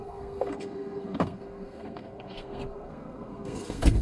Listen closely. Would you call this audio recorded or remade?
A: remade